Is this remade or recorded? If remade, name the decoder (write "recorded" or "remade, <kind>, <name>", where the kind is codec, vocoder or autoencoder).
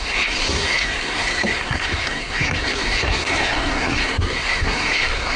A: remade, codec, SNAC